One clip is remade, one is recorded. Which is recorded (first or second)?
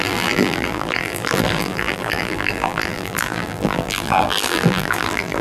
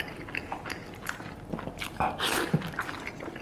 second